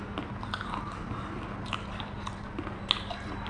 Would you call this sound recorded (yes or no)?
yes